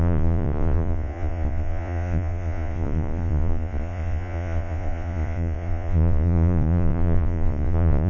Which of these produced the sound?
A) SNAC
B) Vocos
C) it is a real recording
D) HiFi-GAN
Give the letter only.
B